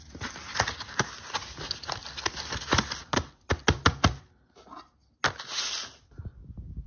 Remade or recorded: recorded